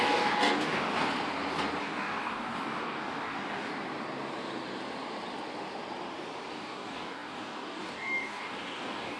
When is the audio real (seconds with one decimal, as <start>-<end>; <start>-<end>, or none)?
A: 0.9-1.8; 3.7-6.5